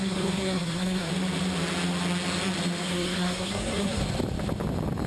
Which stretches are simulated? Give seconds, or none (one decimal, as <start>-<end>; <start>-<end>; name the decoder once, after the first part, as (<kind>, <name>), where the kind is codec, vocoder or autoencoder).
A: 0.0-1.1 (codec, SNAC); 2.8-4.0